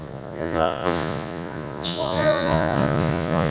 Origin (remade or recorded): remade